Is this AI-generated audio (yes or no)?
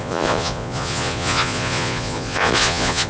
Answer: yes